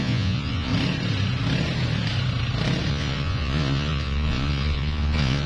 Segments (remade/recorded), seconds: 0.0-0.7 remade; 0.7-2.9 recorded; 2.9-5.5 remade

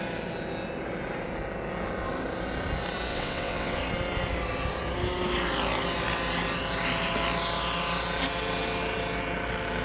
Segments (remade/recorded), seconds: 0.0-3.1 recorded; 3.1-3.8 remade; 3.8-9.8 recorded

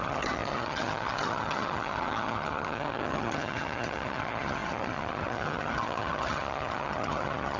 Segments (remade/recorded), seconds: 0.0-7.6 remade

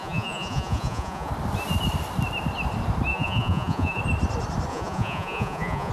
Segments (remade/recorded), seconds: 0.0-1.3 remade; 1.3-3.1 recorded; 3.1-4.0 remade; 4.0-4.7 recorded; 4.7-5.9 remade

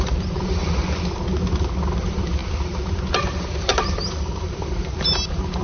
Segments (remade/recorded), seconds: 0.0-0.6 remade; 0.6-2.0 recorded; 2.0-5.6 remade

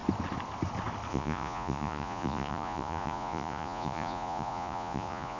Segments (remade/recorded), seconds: 0.0-1.1 recorded; 1.1-5.4 remade